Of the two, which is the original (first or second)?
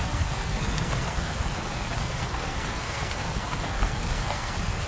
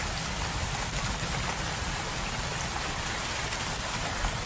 second